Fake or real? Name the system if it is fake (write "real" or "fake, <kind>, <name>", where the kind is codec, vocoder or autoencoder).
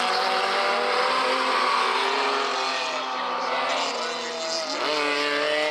real